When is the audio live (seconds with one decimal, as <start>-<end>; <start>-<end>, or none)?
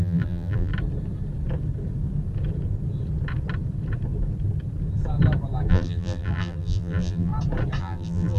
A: 0.7-5.7; 7.3-7.8